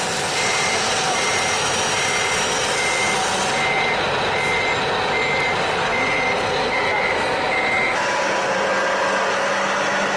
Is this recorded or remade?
recorded